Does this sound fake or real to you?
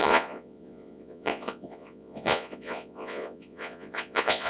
fake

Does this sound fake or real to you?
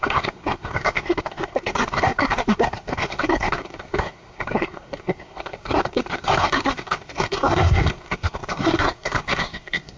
fake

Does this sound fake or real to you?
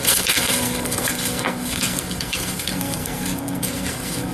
fake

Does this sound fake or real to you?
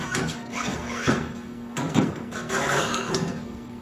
fake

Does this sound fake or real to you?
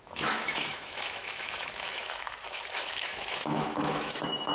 fake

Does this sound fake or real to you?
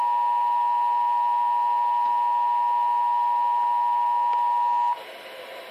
real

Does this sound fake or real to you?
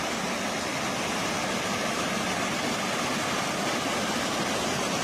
real